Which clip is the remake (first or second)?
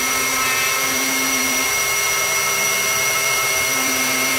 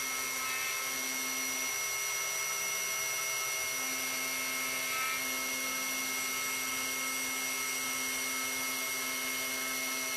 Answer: first